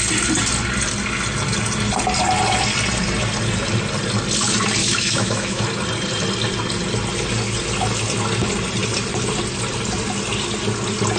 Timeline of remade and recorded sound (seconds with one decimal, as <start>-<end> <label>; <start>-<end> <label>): 0.0-4.8 recorded; 4.8-5.6 remade; 5.6-11.2 recorded